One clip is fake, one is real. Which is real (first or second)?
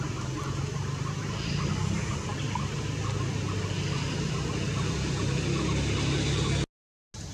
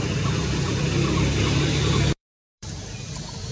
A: first